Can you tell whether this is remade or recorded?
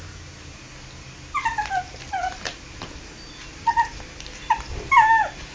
recorded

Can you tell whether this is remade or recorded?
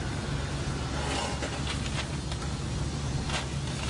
recorded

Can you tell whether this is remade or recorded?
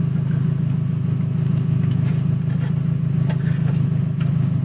recorded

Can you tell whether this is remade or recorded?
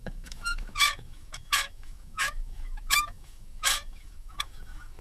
remade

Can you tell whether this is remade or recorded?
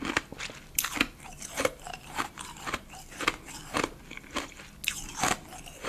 recorded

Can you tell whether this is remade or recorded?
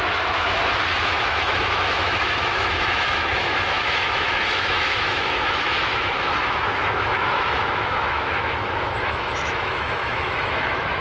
remade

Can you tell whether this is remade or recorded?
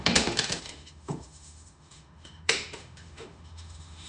remade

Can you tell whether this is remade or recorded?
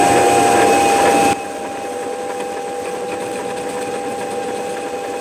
recorded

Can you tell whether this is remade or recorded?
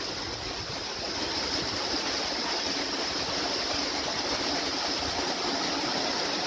recorded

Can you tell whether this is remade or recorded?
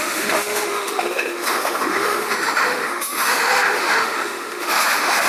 remade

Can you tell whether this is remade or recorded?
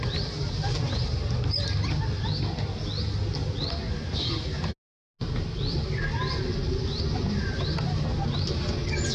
recorded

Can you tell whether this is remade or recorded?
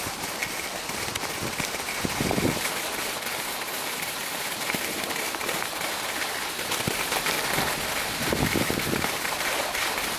recorded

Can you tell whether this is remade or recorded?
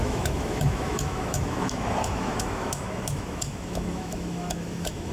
remade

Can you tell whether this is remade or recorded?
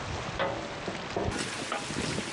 recorded